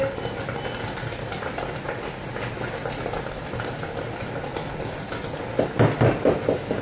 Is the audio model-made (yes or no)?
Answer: no